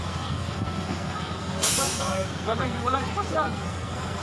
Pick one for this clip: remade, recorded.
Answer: remade